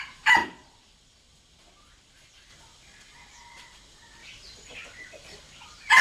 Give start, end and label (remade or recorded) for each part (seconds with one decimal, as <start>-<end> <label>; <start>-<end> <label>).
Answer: 0.0-0.4 recorded; 0.4-2.5 remade; 2.5-4.2 recorded; 4.2-6.0 remade